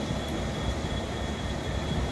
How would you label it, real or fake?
real